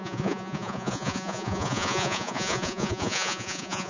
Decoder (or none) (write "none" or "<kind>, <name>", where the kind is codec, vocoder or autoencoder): vocoder, Vocos